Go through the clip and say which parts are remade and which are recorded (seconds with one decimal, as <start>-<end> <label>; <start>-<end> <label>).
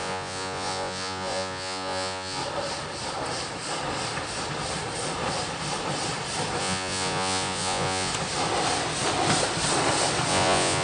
0.0-2.4 remade; 2.4-6.6 recorded; 6.6-8.1 remade; 8.1-10.3 recorded; 10.3-10.8 remade